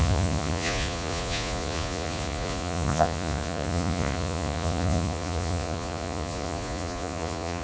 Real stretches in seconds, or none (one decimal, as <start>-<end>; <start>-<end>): none